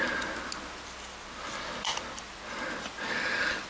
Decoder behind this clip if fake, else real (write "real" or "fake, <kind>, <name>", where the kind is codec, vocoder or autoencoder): real